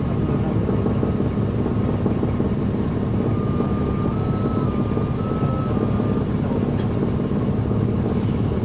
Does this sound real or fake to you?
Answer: real